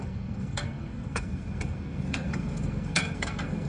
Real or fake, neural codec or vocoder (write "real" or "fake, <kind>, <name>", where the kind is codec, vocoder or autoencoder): fake, codec, SNAC